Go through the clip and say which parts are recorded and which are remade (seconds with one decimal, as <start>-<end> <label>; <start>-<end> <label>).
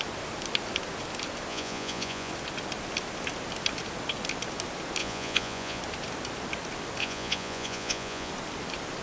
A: 0.0-1.5 recorded; 1.5-2.3 remade; 2.3-5.0 recorded; 5.0-5.8 remade; 5.8-7.0 recorded; 7.0-8.3 remade; 8.3-9.0 recorded